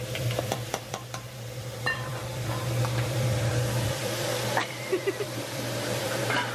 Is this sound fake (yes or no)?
yes